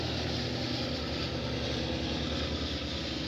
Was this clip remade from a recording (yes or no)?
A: no